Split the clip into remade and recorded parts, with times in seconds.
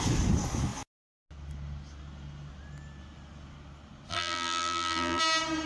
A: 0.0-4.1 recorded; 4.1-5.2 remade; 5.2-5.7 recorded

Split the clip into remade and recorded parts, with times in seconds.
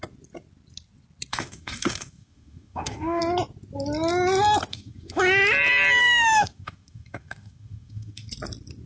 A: 0.0-1.3 recorded; 1.3-3.2 remade; 3.2-4.7 recorded; 4.7-5.2 remade; 5.2-6.0 recorded; 6.0-8.3 remade; 8.3-8.9 recorded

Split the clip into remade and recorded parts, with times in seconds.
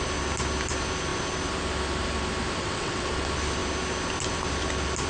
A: 0.0-2.6 recorded; 2.6-3.1 remade; 3.1-5.1 recorded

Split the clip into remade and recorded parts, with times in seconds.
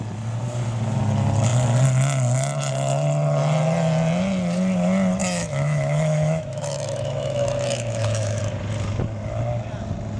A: 0.0-5.2 recorded; 5.2-8.4 remade; 8.4-10.2 recorded